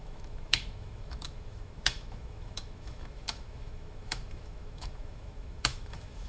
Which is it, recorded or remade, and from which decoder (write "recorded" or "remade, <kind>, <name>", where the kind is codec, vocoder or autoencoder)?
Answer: remade, autoencoder, DAC-VAE